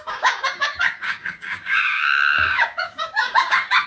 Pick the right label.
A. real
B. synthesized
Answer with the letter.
B